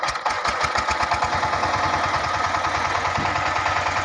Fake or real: fake